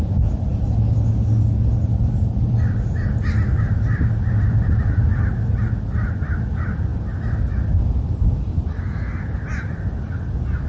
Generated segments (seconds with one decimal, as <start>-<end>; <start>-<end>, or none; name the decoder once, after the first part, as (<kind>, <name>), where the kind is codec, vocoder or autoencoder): none